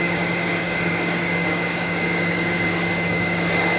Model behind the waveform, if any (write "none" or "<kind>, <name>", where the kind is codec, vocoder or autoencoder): codec, DAC